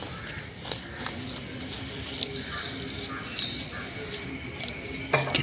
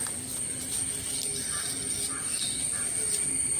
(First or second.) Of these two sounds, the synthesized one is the second